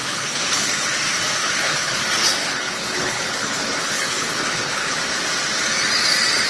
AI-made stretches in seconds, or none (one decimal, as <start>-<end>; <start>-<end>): 0.0-0.9; 1.4-2.0; 2.4-5.0